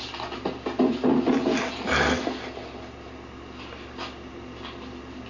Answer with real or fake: real